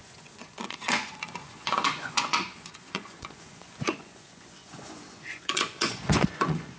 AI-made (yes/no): yes